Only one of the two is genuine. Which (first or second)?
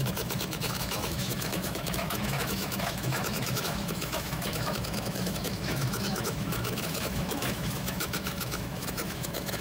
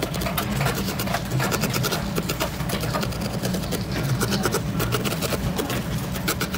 second